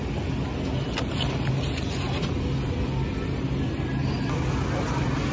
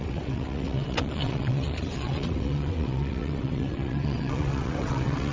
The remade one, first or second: second